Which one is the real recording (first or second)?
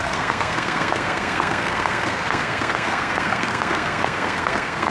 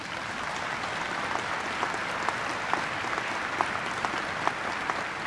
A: second